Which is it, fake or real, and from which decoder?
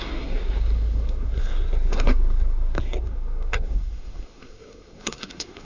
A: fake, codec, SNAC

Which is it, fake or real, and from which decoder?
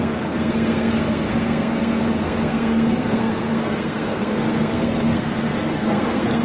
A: fake, codec, SNAC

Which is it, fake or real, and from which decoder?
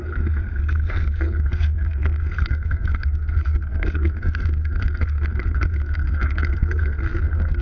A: fake, codec, SNAC